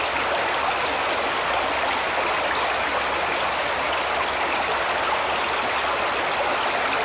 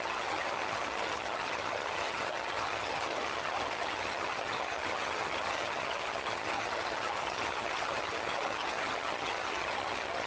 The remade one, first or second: second